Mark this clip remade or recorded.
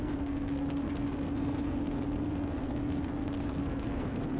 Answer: remade